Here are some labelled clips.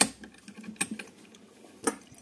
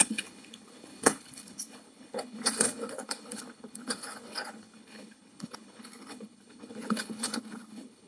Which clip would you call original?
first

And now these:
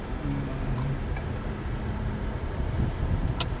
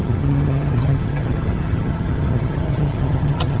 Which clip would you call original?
first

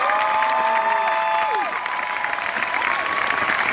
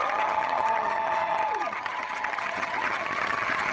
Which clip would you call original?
first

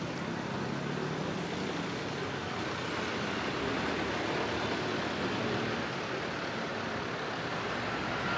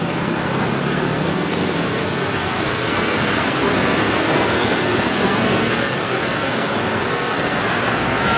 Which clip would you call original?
first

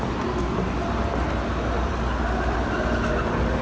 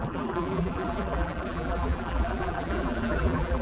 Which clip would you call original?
first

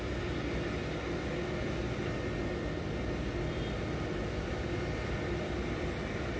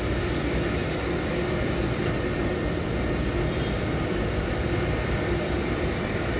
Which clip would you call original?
first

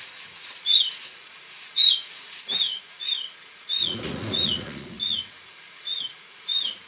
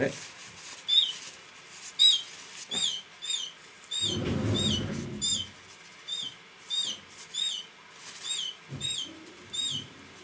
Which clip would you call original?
second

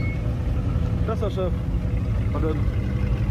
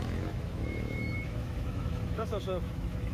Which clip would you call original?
first